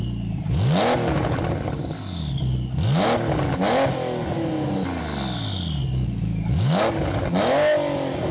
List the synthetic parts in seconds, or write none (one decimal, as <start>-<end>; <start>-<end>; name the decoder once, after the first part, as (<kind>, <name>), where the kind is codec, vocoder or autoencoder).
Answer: 5.8-7.0 (codec, DAC)